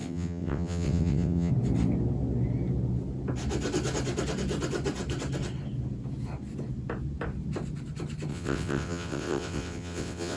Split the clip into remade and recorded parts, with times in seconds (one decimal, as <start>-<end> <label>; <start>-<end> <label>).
0.0-1.5 remade; 1.5-8.3 recorded; 8.3-10.4 remade